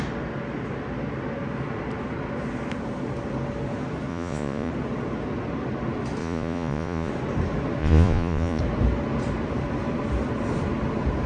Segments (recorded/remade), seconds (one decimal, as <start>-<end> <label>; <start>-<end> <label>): 0.0-4.1 recorded; 4.1-4.7 remade; 4.7-6.2 recorded; 6.2-7.1 remade; 7.1-7.8 recorded; 7.8-8.6 remade; 8.6-11.3 recorded